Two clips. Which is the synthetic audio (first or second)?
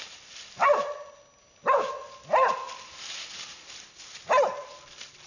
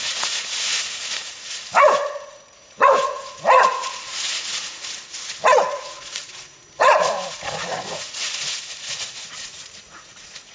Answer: second